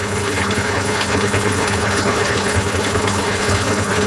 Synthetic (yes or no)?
yes